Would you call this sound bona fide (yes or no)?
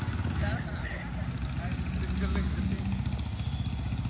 yes